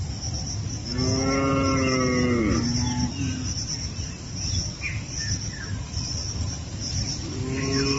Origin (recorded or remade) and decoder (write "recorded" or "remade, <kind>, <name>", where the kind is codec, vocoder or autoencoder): recorded